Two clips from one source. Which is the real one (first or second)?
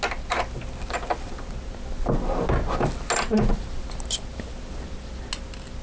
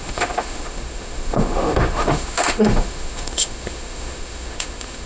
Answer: first